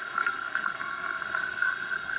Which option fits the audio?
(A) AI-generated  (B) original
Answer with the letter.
A